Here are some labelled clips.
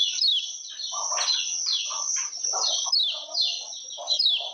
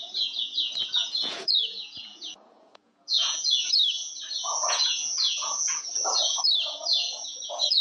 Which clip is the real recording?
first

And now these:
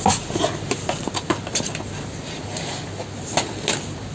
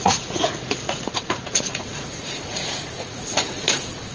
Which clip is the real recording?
first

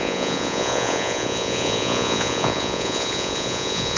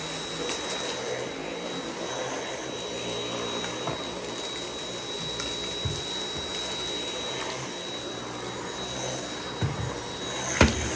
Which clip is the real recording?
second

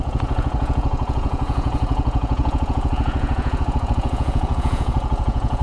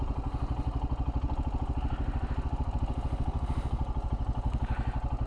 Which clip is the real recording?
second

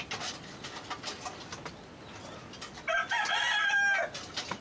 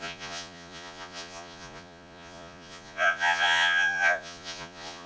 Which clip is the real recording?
first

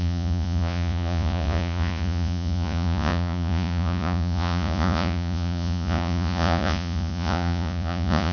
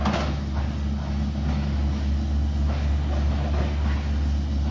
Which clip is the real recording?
second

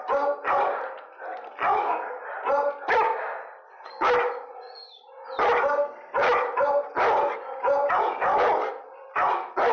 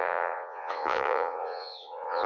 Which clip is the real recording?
first